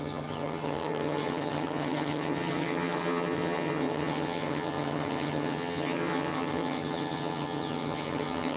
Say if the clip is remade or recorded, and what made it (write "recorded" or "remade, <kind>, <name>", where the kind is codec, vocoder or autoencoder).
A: remade, vocoder, HiFi-GAN